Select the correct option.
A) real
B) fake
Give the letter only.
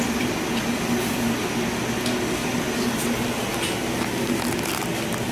A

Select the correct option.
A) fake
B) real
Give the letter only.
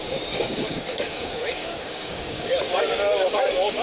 A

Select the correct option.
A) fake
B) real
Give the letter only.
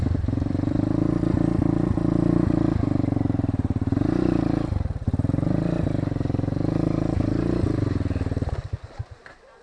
A